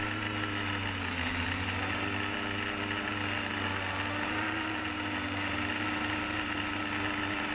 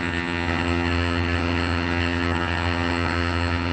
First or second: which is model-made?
second